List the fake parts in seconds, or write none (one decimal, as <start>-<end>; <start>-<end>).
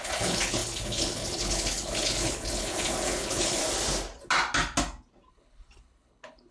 0.0-3.6; 5.3-6.5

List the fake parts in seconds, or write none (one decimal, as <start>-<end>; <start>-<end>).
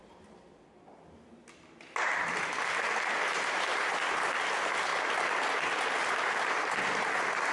none